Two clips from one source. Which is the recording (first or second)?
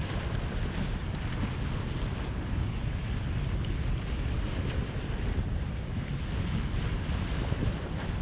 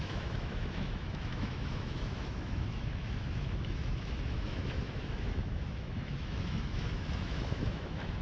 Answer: first